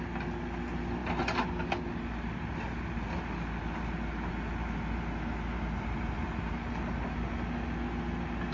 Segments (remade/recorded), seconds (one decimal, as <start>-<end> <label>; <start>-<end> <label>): 0.0-8.5 recorded